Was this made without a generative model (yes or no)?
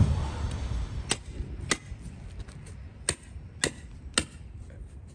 yes